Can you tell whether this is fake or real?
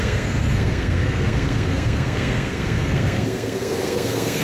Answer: fake